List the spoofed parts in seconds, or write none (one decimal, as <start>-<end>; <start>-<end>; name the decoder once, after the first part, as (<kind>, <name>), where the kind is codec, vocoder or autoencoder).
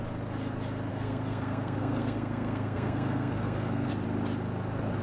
0.9-3.9 (codec, SNAC)